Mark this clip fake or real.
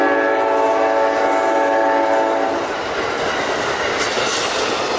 real